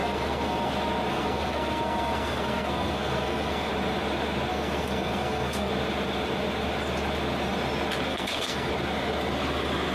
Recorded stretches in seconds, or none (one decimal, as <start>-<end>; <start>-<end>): 0.7-1.1; 3.7-4.5; 5.7-8.1; 8.7-9.9